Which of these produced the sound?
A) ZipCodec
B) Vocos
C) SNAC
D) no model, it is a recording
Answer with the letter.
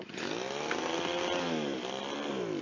D